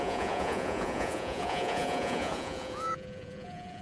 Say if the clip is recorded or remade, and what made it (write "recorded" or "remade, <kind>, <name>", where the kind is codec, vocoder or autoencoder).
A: remade, vocoder, Vocos